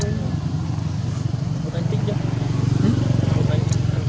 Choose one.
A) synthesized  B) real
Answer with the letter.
B